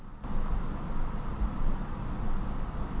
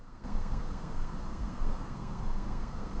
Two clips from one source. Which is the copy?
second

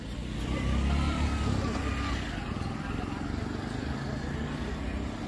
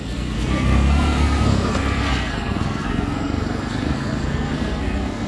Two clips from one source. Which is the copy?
second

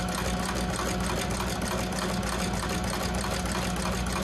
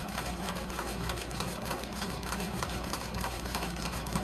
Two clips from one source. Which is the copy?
second